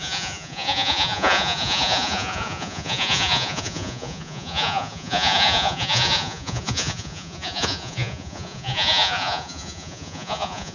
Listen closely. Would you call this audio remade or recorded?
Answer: remade